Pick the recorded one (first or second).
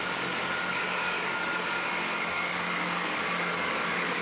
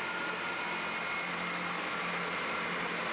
second